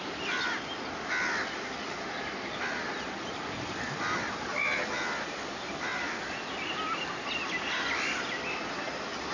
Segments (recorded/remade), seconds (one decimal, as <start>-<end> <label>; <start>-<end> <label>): 0.0-9.3 recorded